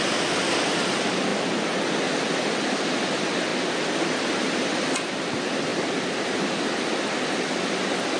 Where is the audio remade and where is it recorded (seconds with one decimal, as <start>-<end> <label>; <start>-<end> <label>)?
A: 0.0-8.2 recorded